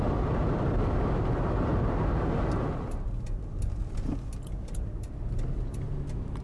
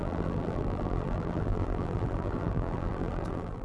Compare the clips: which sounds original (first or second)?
first